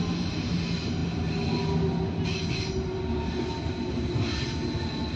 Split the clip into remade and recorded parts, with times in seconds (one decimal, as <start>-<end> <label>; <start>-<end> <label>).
0.0-5.2 recorded